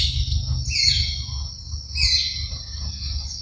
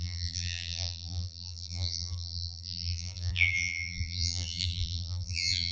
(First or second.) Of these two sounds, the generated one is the second